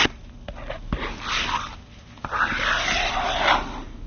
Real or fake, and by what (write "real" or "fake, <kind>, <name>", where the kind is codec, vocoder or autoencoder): real